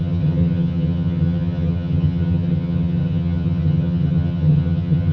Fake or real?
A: fake